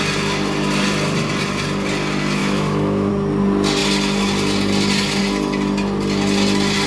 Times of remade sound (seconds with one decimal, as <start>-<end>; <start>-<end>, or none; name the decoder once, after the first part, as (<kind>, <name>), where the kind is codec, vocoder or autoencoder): 2.4-3.1 (autoencoder, DAC-VAE)